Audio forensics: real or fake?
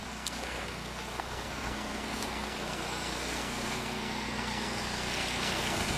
fake